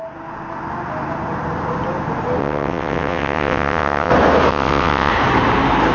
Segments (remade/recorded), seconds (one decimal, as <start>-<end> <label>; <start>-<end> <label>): 0.0-2.4 recorded; 2.4-4.1 remade; 4.1-4.5 recorded; 4.5-5.1 remade; 5.1-5.9 recorded